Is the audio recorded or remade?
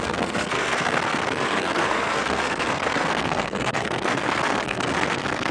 remade